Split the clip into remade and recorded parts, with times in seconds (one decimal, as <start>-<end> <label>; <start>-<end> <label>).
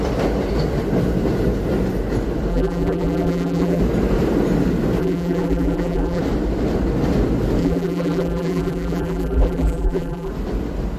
0.0-2.5 recorded; 2.5-3.8 remade; 3.8-5.0 recorded; 5.0-6.2 remade; 6.2-7.6 recorded; 7.6-10.3 remade; 10.3-11.0 recorded